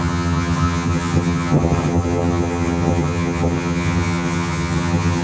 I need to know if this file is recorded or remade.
remade